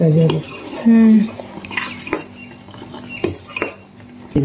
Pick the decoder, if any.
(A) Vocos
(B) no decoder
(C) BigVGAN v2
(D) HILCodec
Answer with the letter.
B